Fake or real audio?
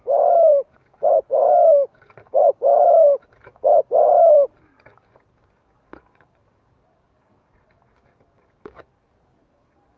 fake